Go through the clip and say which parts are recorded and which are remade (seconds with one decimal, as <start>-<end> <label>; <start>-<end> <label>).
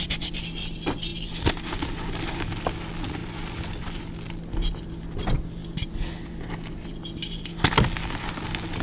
0.0-8.8 recorded